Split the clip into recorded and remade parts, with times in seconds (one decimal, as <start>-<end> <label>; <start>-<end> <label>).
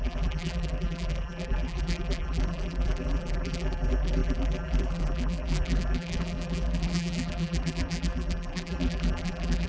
0.0-9.7 remade